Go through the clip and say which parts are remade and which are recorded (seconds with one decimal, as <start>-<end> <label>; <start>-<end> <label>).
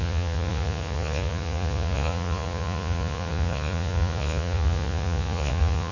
0.0-5.9 remade